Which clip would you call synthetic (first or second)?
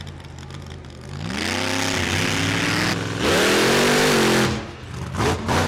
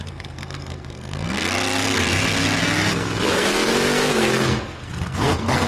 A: second